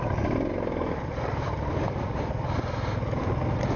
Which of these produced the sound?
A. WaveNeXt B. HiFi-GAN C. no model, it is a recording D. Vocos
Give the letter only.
C